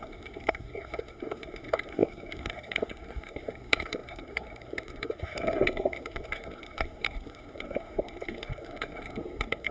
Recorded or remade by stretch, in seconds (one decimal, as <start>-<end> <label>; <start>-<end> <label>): 0.0-9.7 remade